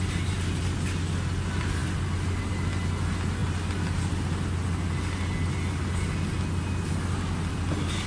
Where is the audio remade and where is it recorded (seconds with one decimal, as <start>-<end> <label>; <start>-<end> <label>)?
0.0-8.1 recorded